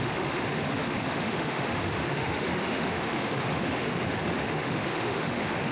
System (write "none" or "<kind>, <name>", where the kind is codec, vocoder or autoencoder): autoencoder, DAC-VAE